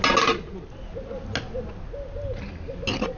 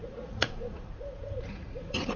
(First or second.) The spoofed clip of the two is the second